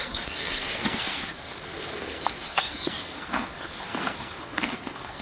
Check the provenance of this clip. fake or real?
fake